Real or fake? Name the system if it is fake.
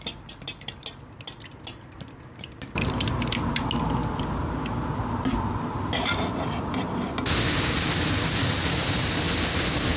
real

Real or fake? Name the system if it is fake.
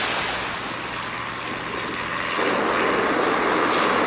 real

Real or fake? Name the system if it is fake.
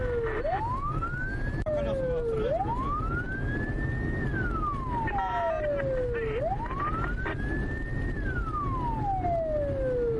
real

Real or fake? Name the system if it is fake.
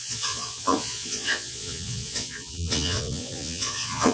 fake, vocoder, Vocos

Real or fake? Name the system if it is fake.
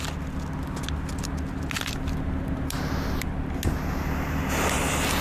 real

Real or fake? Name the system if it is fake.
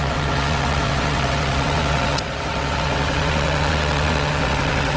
fake, vocoder, WaveNeXt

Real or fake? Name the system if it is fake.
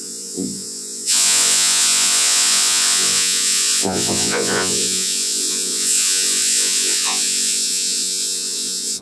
fake, vocoder, Vocos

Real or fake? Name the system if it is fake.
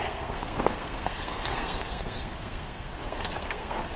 fake, codec, SNAC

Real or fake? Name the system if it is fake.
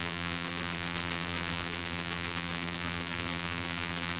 fake, vocoder, BigVGAN v2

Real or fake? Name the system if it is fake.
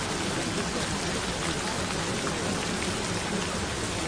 real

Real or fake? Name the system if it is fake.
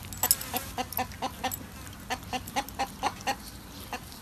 real